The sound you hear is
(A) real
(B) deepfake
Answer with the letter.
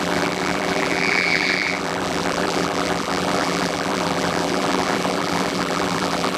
B